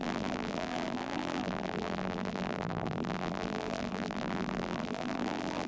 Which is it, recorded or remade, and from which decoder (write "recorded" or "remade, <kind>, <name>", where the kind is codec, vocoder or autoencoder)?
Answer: remade, vocoder, BigVGAN v2